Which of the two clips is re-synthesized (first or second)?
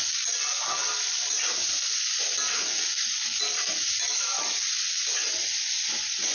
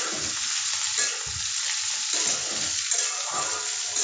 second